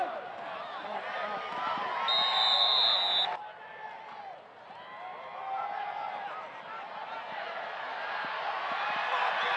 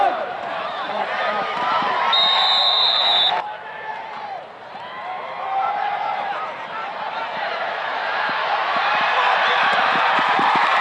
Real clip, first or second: first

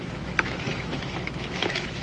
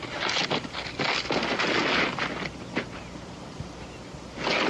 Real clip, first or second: second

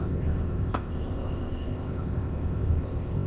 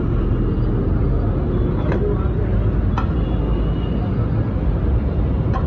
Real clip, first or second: second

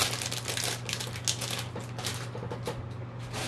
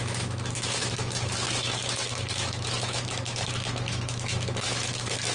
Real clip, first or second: first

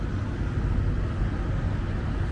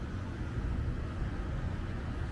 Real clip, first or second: first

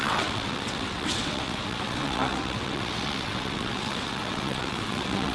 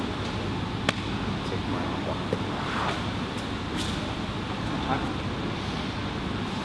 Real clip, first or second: second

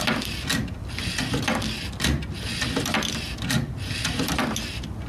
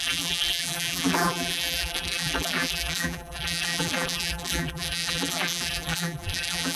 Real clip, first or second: first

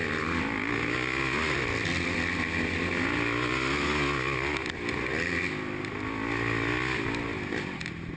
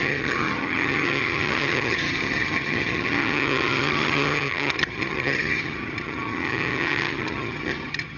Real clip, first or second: first